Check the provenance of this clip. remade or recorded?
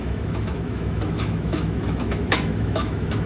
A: remade